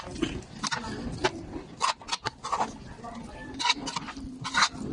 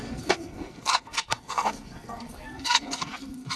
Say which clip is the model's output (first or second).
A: second